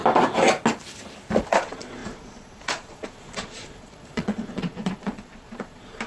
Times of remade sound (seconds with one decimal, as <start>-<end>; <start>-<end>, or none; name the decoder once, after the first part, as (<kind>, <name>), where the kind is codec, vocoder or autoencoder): 1.4-6.1 (vocoder, Vocos)